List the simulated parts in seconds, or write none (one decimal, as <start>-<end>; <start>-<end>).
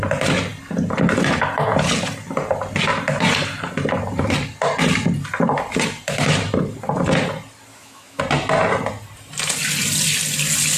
7.7-8.2